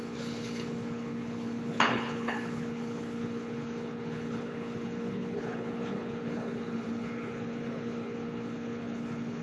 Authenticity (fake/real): fake